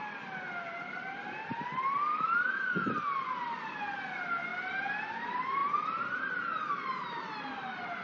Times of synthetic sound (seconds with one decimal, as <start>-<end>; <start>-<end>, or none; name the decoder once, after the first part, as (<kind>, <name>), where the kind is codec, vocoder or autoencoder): 2.1-2.9 (autoencoder, DAC-VAE)